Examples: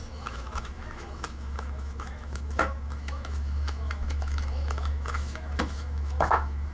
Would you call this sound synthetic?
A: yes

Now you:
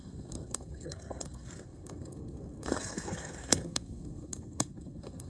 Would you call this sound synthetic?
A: yes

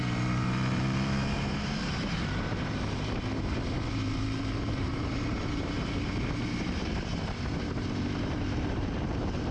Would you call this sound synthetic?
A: yes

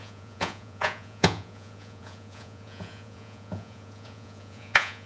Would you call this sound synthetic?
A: yes